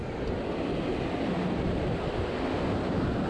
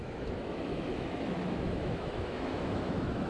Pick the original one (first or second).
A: first